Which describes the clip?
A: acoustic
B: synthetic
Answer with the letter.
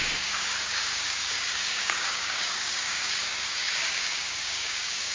B